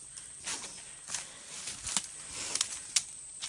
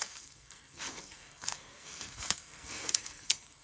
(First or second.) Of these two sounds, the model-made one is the second